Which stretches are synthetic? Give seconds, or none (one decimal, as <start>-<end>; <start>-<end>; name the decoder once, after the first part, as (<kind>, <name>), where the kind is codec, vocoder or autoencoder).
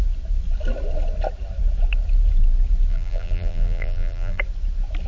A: 2.9-4.4 (vocoder, BigVGAN v2)